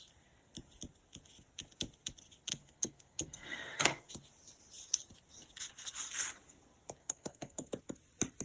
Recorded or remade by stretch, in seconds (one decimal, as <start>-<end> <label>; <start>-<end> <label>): 0.0-2.5 recorded; 2.5-4.1 remade; 4.1-7.0 recorded; 7.0-7.7 remade; 7.7-8.4 recorded